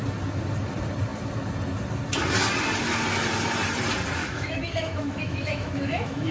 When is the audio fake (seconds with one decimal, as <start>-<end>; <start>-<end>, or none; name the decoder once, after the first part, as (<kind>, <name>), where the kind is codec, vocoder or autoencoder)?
4.2-6.3 (autoencoder, DAC-VAE)